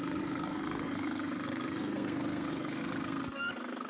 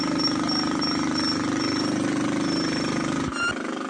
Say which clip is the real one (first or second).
second